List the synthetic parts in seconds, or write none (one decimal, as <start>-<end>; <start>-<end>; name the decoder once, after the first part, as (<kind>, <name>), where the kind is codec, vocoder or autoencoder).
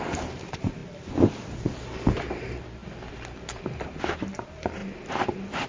0.0-2.8 (vocoder, BigVGAN v2); 4.1-4.8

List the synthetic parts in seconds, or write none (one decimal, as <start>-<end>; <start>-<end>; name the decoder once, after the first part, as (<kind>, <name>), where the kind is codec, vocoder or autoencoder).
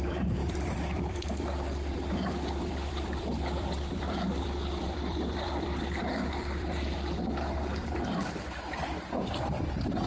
0.0-10.1 (vocoder, BigVGAN v2)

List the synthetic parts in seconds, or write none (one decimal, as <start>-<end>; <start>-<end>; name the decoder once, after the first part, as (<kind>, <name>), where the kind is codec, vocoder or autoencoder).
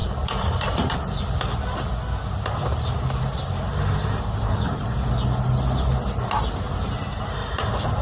0.0-0.9 (vocoder, BigVGAN v2)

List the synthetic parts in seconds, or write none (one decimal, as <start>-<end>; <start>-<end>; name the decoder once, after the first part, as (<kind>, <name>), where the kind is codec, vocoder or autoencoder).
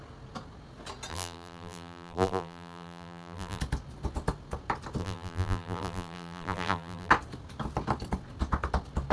1.1-3.6 (vocoder, BigVGAN v2); 5.0-7.1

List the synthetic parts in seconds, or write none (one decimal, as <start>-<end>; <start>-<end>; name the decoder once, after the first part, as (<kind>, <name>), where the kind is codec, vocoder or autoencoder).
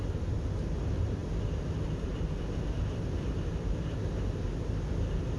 none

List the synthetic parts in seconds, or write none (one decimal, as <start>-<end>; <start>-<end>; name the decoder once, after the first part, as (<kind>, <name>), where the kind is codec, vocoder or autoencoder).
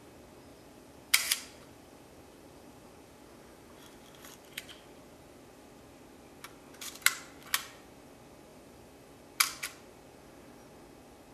0.5-4.7 (vocoder, BigVGAN v2); 8.5-9.2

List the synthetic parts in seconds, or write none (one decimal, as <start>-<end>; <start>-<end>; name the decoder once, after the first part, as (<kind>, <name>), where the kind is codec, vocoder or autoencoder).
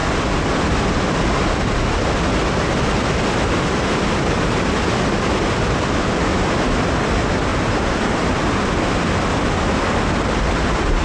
7.5-8.7 (vocoder, BigVGAN v2)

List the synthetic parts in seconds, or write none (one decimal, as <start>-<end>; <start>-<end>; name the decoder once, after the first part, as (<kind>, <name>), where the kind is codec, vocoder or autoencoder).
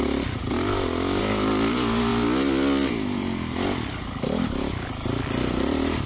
0.0-0.4 (vocoder, BigVGAN v2); 1.2-6.1